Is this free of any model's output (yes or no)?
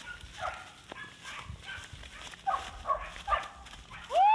yes